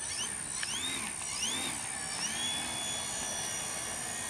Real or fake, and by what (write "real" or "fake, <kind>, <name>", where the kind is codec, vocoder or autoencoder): real